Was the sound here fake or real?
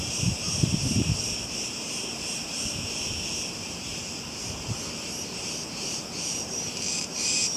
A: fake